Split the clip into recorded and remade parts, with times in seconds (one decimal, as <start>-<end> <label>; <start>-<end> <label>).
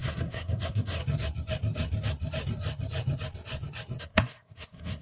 0.0-1.0 remade; 1.0-4.0 recorded; 4.0-5.0 remade